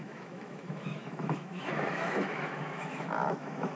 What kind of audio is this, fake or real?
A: fake